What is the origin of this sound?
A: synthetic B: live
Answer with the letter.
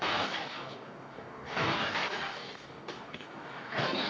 A